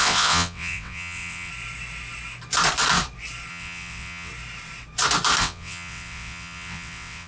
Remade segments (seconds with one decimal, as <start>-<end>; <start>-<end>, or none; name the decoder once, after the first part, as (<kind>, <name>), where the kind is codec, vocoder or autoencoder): 0.0-1.5 (vocoder, WaveNeXt); 3.5-4.3; 5.4-7.3